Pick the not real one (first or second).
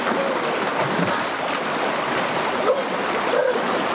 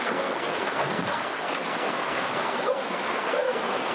second